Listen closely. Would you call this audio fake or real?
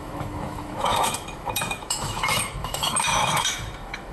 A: fake